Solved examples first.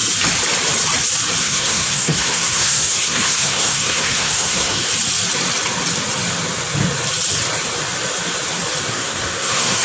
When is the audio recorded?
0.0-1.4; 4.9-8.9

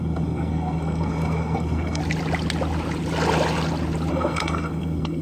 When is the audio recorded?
2.0-4.1